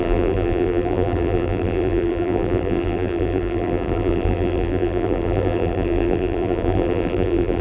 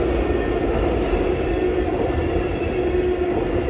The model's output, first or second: first